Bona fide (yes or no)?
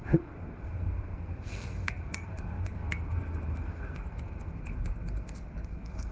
no